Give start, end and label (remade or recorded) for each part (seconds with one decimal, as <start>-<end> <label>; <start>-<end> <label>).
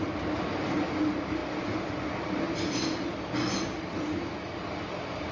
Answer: 0.0-5.3 recorded